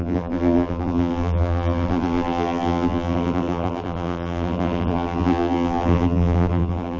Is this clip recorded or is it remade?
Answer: remade